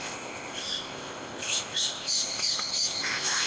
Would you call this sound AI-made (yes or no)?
yes